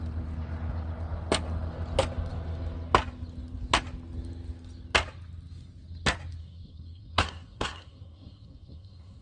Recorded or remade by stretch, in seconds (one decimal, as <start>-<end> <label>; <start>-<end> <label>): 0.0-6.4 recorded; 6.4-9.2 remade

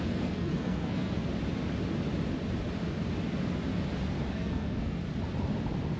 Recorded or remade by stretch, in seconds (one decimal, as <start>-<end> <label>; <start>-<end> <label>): 0.0-1.2 remade; 1.2-4.3 recorded; 4.3-5.0 remade; 5.0-6.0 recorded

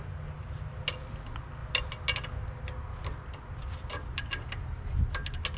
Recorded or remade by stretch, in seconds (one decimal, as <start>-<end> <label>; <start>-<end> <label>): 0.0-5.6 recorded

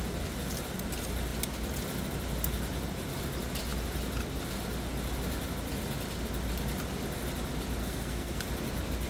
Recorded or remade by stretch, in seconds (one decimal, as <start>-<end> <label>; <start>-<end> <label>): 0.0-7.8 recorded; 7.8-8.4 remade; 8.4-9.1 recorded

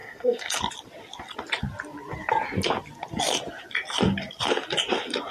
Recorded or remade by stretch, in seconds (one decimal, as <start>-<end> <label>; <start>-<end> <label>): 0.0-0.6 remade; 0.6-5.3 recorded

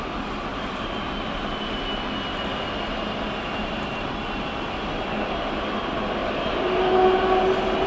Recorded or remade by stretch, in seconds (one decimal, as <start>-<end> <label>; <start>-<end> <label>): 0.0-7.9 recorded

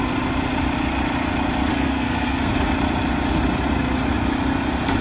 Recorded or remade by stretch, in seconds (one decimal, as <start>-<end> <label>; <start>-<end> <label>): 0.0-1.7 recorded; 1.7-2.5 remade; 2.5-5.0 recorded

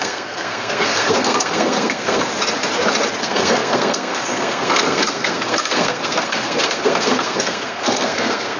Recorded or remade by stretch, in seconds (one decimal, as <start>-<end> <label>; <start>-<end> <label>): 0.0-2.3 remade; 2.3-3.2 recorded; 3.2-8.6 remade